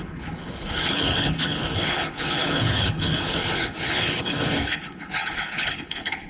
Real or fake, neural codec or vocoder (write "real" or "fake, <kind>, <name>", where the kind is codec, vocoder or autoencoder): fake, codec, HILCodec